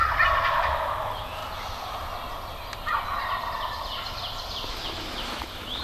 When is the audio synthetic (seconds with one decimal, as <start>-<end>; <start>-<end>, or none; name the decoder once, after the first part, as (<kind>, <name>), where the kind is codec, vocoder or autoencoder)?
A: 0.5-1.4 (autoencoder, DAC-VAE); 4.7-5.8